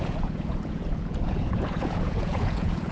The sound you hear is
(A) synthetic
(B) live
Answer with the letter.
A